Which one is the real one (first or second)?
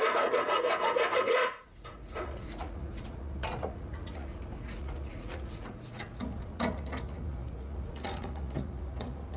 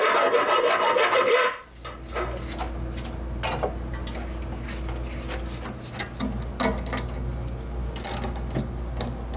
second